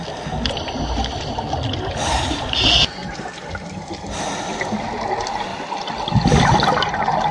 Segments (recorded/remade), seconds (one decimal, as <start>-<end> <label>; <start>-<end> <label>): 0.0-7.3 recorded